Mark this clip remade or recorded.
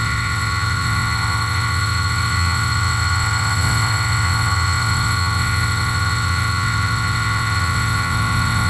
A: remade